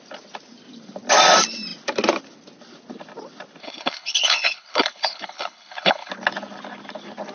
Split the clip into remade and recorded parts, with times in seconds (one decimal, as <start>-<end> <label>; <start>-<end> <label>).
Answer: 0.0-3.6 recorded; 3.6-6.1 remade; 6.1-7.3 recorded